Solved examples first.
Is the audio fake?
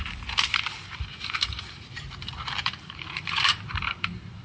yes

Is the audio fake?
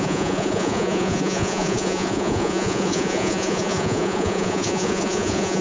yes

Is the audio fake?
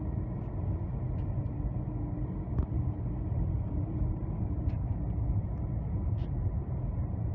no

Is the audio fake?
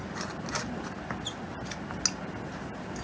no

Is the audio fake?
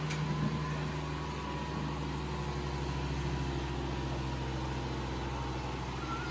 no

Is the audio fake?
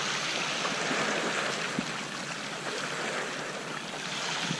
no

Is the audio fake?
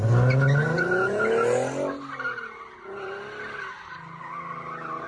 no